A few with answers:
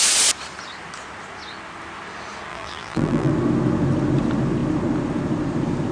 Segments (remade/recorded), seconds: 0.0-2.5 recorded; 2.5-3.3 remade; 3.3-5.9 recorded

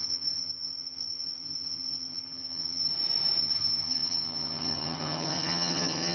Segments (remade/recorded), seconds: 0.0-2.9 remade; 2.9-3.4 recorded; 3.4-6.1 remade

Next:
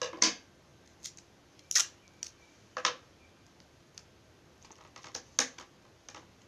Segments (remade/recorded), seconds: 0.0-6.5 recorded

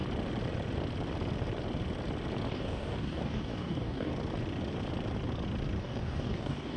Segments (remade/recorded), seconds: 0.0-2.5 recorded; 2.5-4.1 remade; 4.1-5.8 recorded; 5.8-6.8 remade